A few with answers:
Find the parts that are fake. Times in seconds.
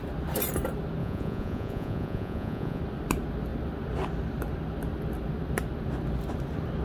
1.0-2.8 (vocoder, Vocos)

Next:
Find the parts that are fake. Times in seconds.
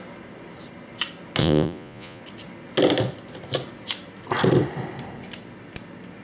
1.4-2.2 (vocoder, Vocos)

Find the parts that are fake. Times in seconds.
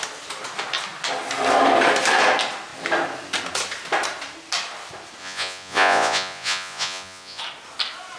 5.2-7.4 (vocoder, Vocos)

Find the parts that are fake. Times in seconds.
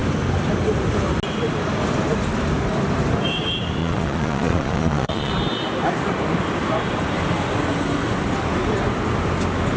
3.8-5.3 (vocoder, Vocos)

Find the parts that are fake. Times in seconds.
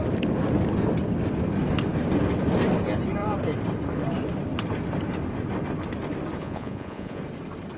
6.4-7.2 (vocoder, Vocos)